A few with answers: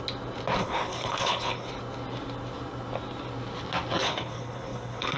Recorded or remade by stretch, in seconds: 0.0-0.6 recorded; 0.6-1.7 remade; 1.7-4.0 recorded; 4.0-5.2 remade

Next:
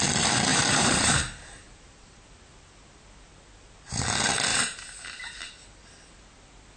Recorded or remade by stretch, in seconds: 0.0-0.5 recorded; 0.5-2.2 remade; 2.2-4.5 recorded; 4.5-5.5 remade; 5.5-6.8 recorded

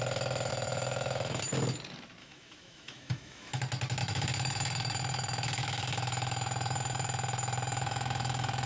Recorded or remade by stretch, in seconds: 0.0-0.5 recorded; 0.5-1.4 remade; 1.4-2.2 recorded; 2.2-3.6 remade; 3.6-4.0 recorded; 4.0-8.7 remade

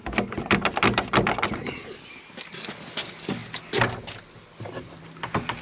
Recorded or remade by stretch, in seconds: 0.0-5.6 recorded

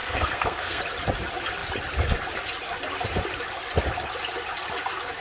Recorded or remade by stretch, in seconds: 0.0-0.8 remade; 0.8-5.2 recorded

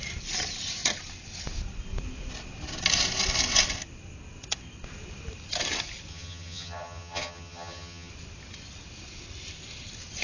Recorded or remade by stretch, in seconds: 0.0-6.1 recorded; 6.1-8.1 remade; 8.1-10.2 recorded